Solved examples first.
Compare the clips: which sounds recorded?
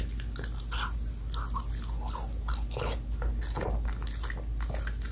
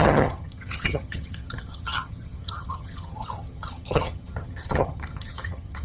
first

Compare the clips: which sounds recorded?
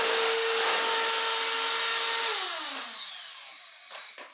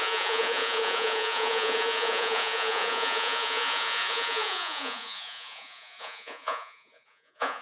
first